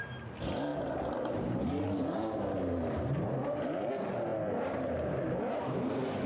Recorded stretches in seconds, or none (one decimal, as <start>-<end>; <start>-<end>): 0.0-0.7; 3.9-4.3; 5.8-6.3